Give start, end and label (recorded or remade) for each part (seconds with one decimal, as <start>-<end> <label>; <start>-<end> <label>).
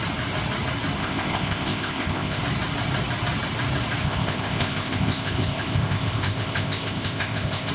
0.0-1.0 recorded; 1.0-2.4 remade; 2.4-4.0 recorded; 4.0-7.7 remade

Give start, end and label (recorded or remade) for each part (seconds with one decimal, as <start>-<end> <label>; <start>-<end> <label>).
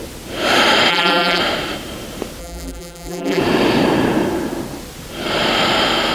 0.0-0.9 recorded; 0.9-1.4 remade; 1.4-2.4 recorded; 2.4-3.4 remade; 3.4-6.1 recorded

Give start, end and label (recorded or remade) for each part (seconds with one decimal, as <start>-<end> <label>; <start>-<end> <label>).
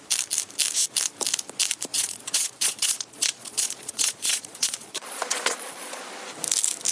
0.0-1.9 recorded; 1.9-6.0 remade; 6.0-6.9 recorded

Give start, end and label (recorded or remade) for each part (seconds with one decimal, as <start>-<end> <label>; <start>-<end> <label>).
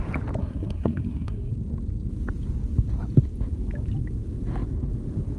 0.0-0.4 recorded; 0.4-1.5 remade; 1.5-5.4 recorded